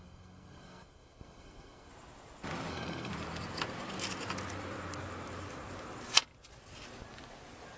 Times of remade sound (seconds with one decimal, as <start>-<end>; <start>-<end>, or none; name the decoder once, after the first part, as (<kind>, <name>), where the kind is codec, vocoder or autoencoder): 0.0-1.9 (codec, SNAC); 2.7-3.1